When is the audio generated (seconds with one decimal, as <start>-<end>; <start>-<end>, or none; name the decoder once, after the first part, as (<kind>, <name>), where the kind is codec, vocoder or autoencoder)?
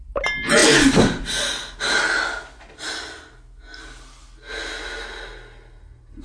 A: none